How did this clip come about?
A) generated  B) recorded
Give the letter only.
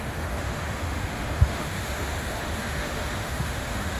A